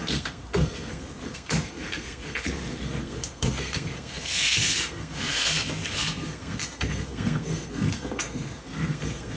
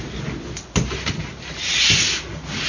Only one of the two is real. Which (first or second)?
second